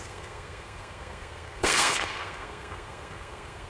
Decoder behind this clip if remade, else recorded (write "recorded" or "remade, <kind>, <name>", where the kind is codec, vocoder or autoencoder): remade, codec, SNAC